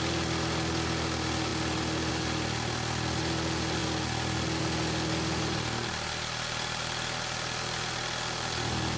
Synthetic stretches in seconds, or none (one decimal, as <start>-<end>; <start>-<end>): none